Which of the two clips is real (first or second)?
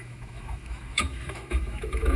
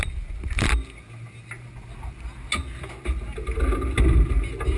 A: second